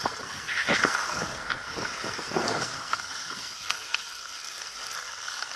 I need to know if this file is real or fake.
fake